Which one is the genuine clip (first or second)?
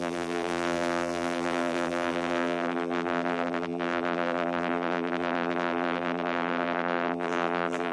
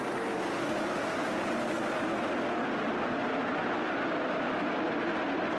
second